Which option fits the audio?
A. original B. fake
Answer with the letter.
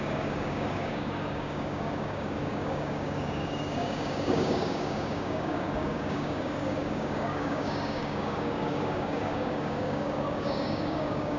B